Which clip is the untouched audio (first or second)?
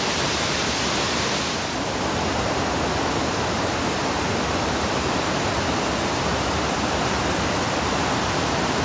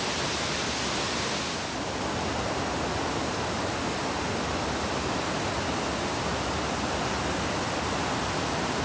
second